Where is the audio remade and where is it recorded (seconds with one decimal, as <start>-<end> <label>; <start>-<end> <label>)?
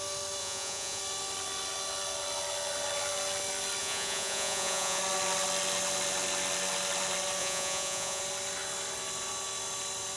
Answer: 0.0-0.4 recorded; 0.4-1.0 remade; 1.0-3.8 recorded; 3.8-5.0 remade; 5.0-7.4 recorded; 7.4-8.2 remade; 8.2-10.2 recorded